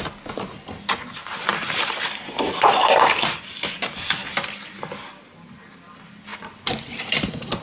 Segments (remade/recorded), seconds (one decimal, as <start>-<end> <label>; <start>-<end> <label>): 0.0-7.6 recorded